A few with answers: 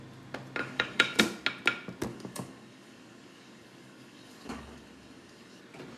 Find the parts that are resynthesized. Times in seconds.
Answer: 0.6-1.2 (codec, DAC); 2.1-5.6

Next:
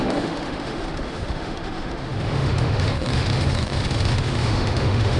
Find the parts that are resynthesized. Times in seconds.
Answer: 0.0-5.2 (autoencoder, DAC-VAE)

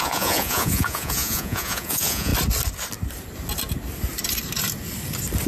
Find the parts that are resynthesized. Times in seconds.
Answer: 0.0-2.3 (vocoder, Vocos)

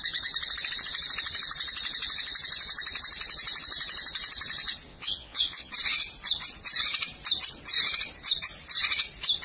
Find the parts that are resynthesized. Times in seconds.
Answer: 4.9-5.7 (vocoder, Vocos)